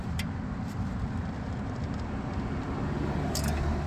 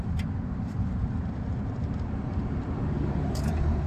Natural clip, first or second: first